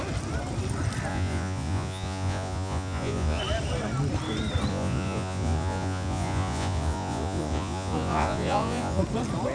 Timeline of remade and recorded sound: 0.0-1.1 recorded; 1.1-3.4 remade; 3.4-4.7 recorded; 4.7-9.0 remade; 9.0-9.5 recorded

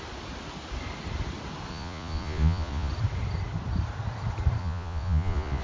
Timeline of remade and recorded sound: 0.0-1.7 recorded; 1.7-2.9 remade; 2.9-4.6 recorded; 4.6-5.6 remade

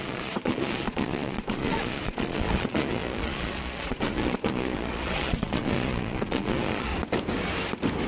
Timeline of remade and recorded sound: 0.0-6.9 remade; 6.9-8.1 recorded

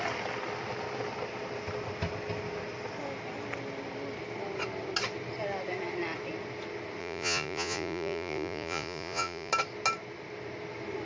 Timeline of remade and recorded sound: 0.0-7.0 recorded; 7.0-9.5 remade; 9.5-11.1 recorded

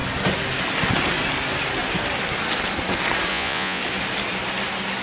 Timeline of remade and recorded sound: 0.0-3.3 recorded; 3.3-3.8 remade; 3.8-5.0 recorded

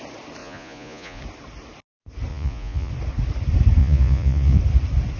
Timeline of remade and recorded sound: 0.0-0.4 recorded; 0.4-1.2 remade; 1.2-2.3 recorded; 2.3-2.9 remade; 2.9-3.8 recorded; 3.8-4.6 remade; 4.6-5.2 recorded

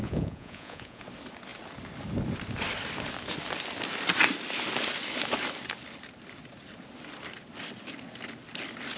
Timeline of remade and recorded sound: 0.0-1.0 remade; 1.0-9.0 recorded